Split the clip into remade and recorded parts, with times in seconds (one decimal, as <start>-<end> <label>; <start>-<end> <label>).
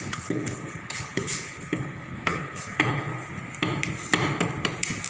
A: 0.0-3.1 remade; 3.1-5.1 recorded